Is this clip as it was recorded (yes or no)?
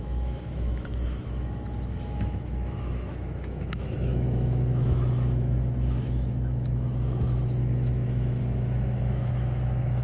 no